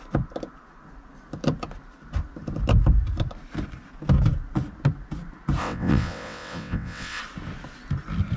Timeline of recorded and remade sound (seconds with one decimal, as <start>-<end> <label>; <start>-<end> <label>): 0.0-5.6 recorded; 5.6-7.2 remade; 7.2-8.4 recorded